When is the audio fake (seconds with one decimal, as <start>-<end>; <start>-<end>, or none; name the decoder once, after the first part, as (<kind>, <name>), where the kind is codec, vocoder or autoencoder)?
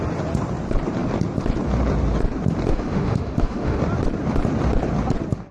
2.7-3.8 (autoencoder, DAC-VAE)